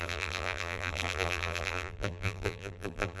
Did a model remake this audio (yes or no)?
yes